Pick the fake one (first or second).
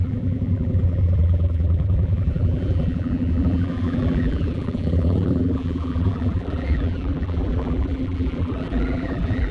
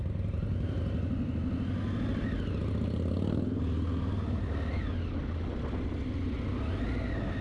first